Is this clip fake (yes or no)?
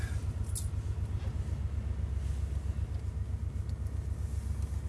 no